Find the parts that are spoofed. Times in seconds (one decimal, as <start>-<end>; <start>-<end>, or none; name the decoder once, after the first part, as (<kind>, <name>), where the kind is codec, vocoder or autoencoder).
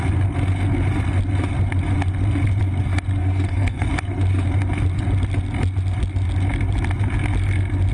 3.2-3.9 (codec, SNAC)